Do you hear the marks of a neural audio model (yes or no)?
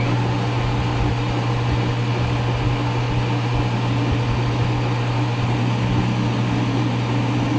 no